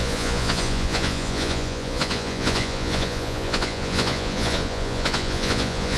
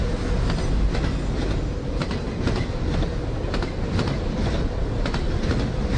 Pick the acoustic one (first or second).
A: second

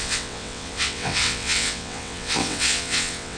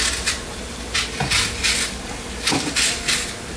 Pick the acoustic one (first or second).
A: second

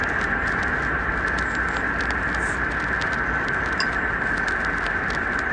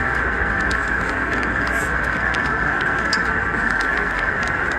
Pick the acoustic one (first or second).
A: first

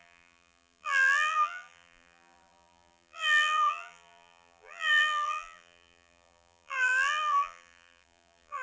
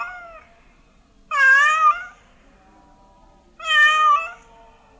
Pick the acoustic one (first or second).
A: second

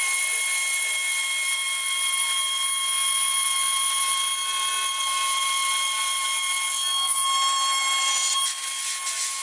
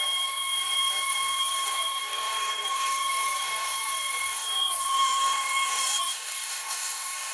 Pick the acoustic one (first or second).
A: first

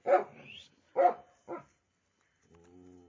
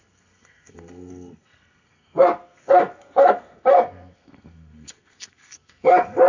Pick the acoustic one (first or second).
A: first